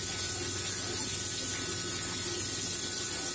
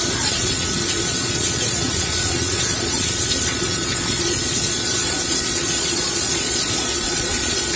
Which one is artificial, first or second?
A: second